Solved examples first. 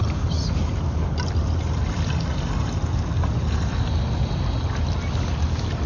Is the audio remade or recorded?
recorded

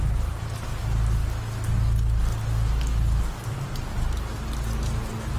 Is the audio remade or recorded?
recorded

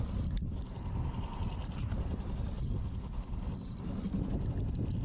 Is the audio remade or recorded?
recorded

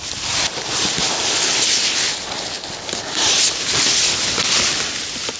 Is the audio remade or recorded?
recorded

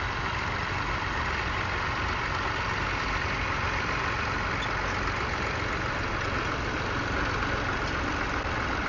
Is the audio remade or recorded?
recorded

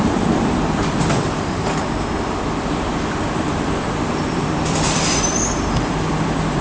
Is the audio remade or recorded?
remade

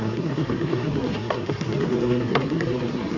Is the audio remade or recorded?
remade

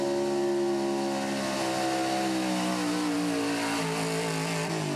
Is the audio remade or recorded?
recorded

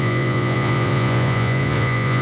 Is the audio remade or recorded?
remade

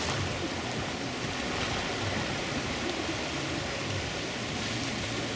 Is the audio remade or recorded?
recorded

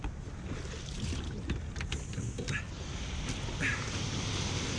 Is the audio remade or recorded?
recorded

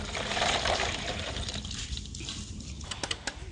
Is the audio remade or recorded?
recorded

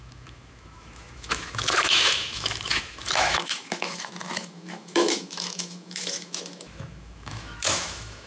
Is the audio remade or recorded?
remade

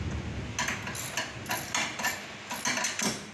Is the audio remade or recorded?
recorded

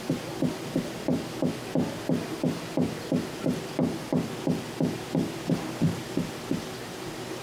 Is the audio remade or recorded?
recorded